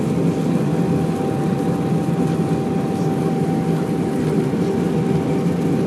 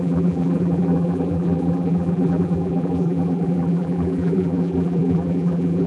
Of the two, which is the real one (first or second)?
first